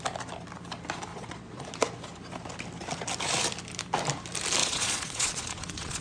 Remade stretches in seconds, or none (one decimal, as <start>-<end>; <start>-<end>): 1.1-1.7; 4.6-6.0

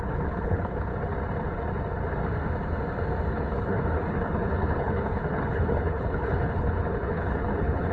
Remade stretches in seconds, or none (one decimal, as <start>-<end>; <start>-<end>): 0.0-0.9; 3.3-7.9

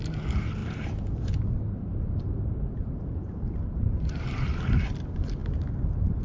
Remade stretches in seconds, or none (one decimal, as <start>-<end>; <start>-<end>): 0.6-2.6; 3.2-4.3

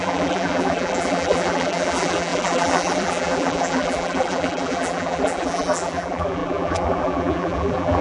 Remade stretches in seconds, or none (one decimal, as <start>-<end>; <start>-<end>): 0.0-8.0